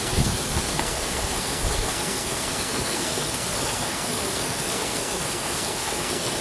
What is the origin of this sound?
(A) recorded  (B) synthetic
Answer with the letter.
B